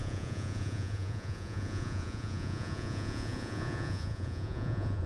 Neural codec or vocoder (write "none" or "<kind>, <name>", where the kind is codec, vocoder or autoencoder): vocoder, Vocos